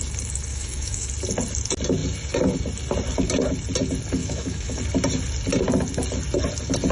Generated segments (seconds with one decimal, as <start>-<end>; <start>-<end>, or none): 0.5-1.1; 4.2-4.8

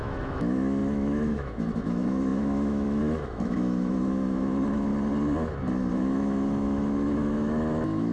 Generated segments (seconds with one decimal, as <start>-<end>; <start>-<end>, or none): 0.0-4.9; 5.9-8.1

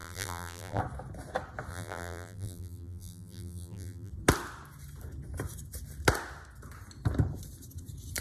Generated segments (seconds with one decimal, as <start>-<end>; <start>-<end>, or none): 0.0-0.8; 1.7-4.1